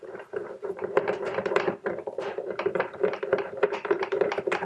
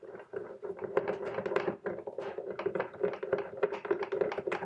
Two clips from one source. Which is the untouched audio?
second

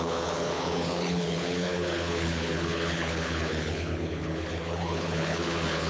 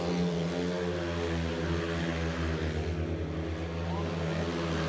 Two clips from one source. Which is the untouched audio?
second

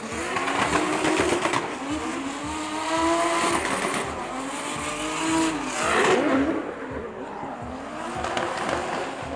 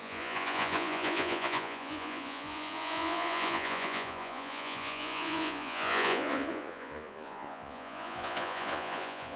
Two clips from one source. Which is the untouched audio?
first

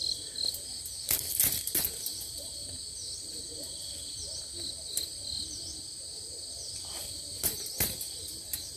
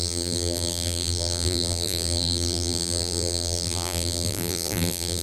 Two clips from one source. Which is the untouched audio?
first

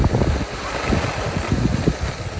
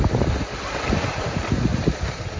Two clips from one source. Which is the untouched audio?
first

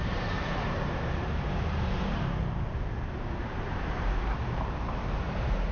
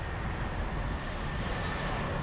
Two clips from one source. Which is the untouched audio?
second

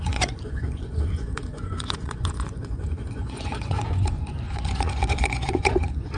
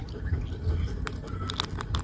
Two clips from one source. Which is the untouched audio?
second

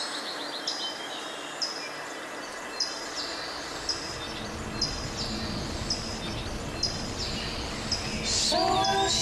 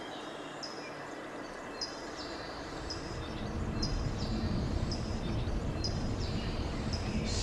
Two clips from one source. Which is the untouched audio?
first